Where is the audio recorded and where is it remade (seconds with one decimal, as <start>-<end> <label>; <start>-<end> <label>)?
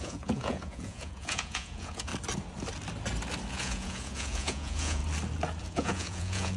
0.0-2.1 remade; 2.1-3.5 recorded; 3.5-5.0 remade; 5.0-5.6 recorded; 5.6-6.6 remade